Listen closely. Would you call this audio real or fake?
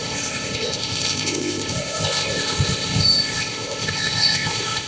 fake